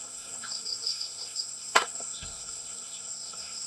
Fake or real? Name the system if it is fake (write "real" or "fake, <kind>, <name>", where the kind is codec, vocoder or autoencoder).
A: fake, codec, SNAC